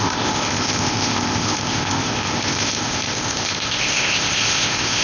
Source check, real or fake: fake